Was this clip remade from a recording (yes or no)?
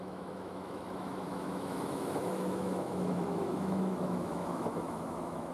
yes